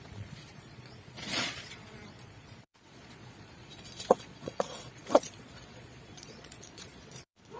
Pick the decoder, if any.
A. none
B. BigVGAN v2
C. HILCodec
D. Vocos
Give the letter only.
D